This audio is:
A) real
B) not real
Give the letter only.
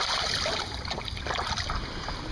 A